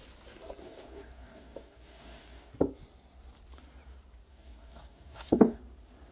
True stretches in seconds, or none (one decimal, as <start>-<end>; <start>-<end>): 0.0-0.6; 2.5-4.3; 5.6-6.1